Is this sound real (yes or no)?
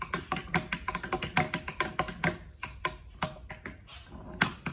yes